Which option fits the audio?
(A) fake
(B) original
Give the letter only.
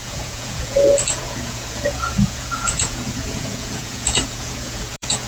A